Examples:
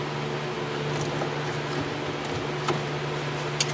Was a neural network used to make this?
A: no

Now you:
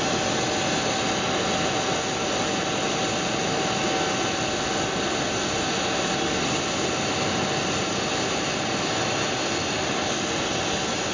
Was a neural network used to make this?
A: no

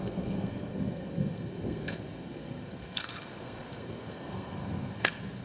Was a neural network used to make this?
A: yes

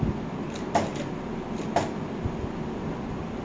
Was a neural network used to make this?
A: no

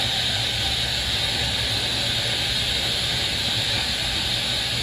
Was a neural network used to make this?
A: no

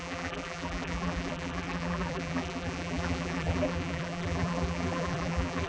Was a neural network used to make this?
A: yes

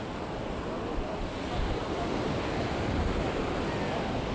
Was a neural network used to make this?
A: no